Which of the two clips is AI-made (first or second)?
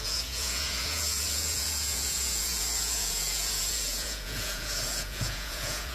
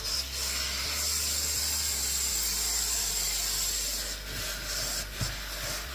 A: first